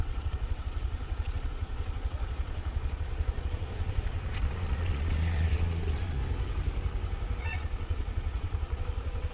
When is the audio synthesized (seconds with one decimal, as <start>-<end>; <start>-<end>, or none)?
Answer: 0.0-6.2; 7.4-9.3